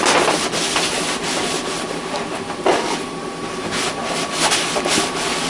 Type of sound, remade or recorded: recorded